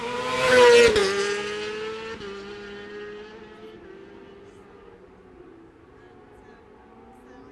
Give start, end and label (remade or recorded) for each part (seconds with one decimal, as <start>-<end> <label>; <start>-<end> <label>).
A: 0.0-7.5 recorded

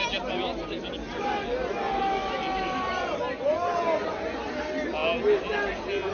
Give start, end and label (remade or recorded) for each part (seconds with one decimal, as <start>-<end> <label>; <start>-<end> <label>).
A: 0.0-6.1 recorded

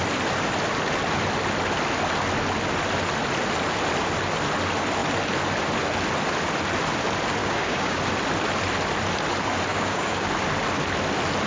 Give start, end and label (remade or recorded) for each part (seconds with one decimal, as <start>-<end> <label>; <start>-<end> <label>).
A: 0.0-7.4 recorded; 7.4-8.0 remade; 8.0-9.7 recorded; 9.7-10.3 remade; 10.3-11.5 recorded

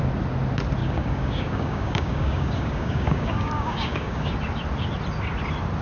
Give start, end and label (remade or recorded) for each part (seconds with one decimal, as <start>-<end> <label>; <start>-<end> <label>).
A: 0.0-0.8 recorded; 0.8-4.3 remade; 4.3-5.8 recorded

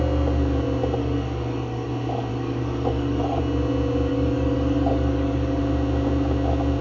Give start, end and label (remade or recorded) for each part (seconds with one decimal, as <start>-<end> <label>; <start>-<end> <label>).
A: 0.0-1.0 recorded; 1.0-1.9 remade; 1.9-2.3 recorded; 2.3-3.4 remade; 3.4-4.1 recorded; 4.1-5.6 remade; 5.6-6.8 recorded